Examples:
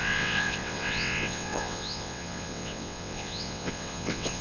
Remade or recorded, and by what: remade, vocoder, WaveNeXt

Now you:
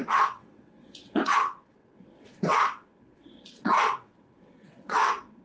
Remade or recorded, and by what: remade, vocoder, WaveNeXt